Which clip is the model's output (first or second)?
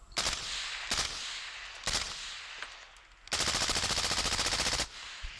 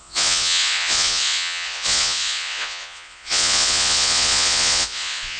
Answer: second